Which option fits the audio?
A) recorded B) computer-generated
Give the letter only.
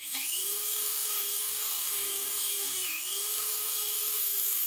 B